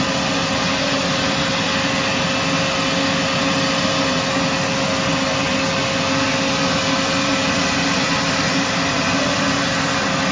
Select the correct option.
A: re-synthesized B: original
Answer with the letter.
B